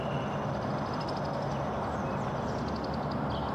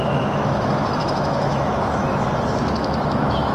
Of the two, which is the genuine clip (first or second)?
first